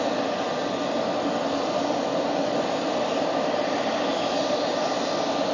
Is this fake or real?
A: real